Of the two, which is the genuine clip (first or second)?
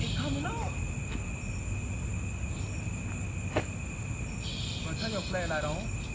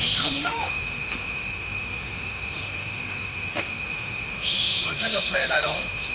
first